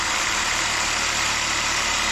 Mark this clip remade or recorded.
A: remade